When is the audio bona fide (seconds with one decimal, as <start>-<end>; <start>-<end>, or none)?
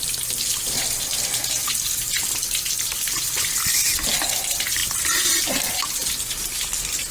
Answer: 0.0-7.1